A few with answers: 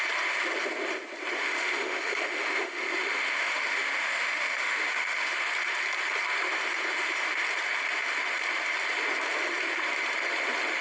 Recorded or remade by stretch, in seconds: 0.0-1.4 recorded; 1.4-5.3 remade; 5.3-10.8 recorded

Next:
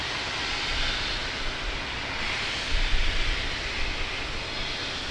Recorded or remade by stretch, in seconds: 0.0-5.1 recorded

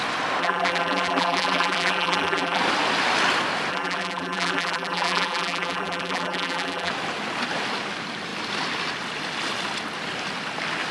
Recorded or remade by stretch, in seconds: 0.0-0.4 recorded; 0.4-2.6 remade; 2.6-3.7 recorded; 3.7-6.9 remade; 6.9-10.9 recorded

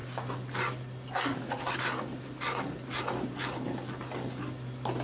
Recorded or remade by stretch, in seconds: 0.0-5.0 recorded